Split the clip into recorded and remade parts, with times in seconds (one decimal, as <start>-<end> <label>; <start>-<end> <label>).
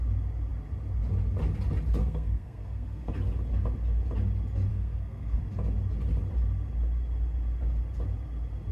0.0-2.0 recorded; 2.0-3.1 remade; 3.1-4.7 recorded; 4.7-5.4 remade; 5.4-8.7 recorded